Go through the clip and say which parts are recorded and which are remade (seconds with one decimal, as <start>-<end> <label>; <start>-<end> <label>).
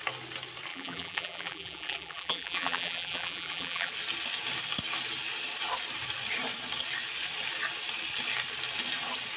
0.0-0.7 recorded; 0.7-3.9 remade; 3.9-9.4 recorded